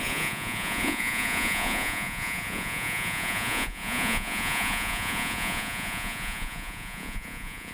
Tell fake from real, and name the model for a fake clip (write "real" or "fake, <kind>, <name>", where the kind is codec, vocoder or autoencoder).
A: fake, vocoder, Vocos